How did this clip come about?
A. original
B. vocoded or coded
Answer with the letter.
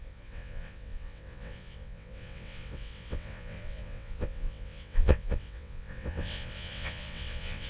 B